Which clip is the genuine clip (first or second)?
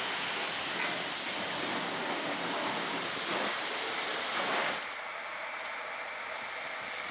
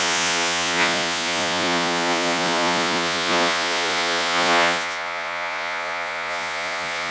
first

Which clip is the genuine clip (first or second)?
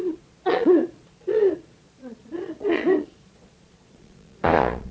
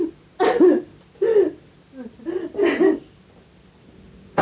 second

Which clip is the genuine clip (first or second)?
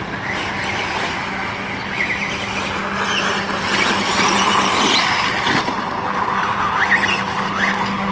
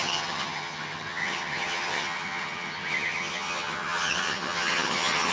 first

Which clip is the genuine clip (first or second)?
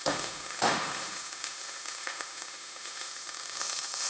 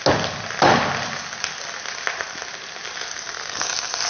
second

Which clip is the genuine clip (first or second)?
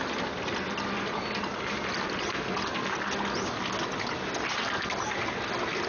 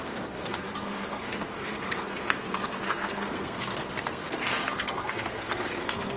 first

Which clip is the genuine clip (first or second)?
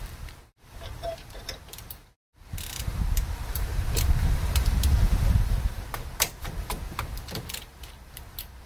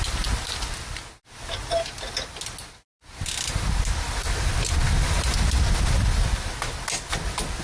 second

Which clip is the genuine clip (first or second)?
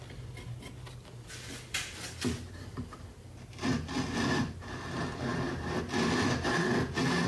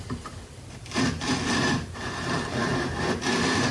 first